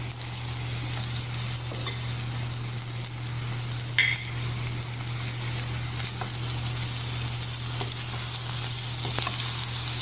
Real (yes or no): yes